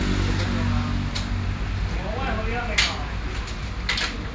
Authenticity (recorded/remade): recorded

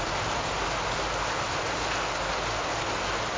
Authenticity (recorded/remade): recorded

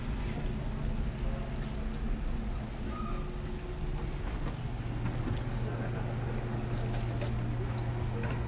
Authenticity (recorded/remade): recorded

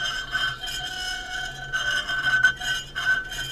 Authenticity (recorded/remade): recorded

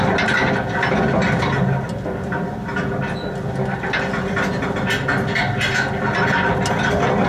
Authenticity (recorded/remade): recorded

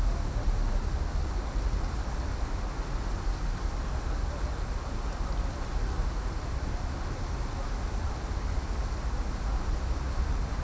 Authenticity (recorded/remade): recorded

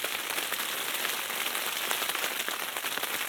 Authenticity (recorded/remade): recorded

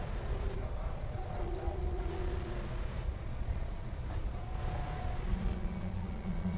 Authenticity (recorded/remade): remade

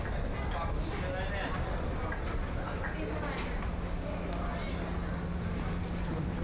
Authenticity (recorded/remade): recorded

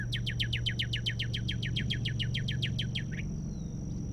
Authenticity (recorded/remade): recorded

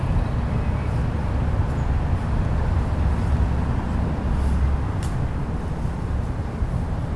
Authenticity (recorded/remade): recorded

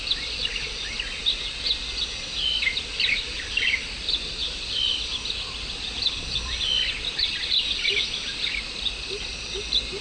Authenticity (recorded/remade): recorded